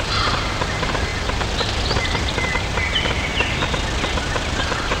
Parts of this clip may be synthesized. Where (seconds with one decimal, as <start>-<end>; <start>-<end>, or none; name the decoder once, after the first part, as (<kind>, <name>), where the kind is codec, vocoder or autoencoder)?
0.0-1.1 (vocoder, BigVGAN v2); 2.0-3.3; 4.2-5.0